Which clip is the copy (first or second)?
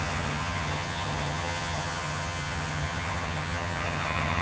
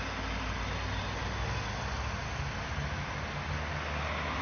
first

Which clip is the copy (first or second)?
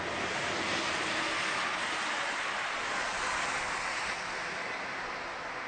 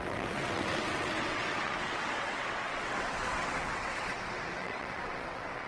second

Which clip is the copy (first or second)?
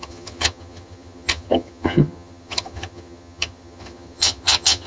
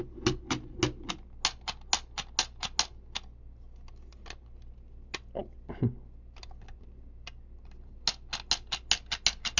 first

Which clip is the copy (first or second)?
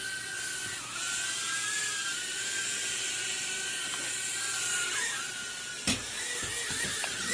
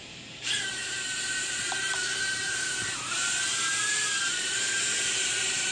second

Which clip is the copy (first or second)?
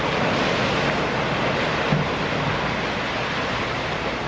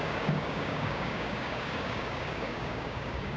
second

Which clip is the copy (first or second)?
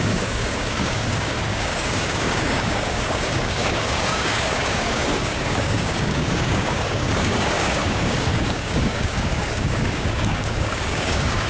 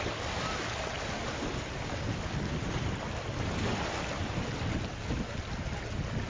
first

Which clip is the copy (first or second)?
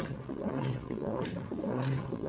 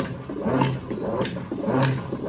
first